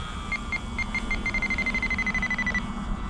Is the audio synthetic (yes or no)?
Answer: no